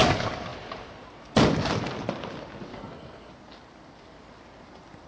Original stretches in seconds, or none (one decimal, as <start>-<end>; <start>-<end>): 0.0-2.7; 3.3-5.1